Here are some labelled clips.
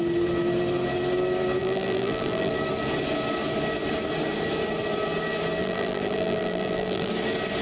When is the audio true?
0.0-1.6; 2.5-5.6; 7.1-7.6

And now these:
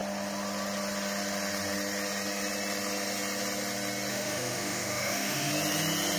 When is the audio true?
0.0-4.1; 5.5-6.2